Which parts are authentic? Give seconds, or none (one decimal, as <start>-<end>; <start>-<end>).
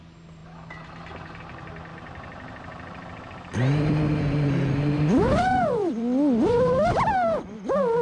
0.0-1.9; 6.7-8.0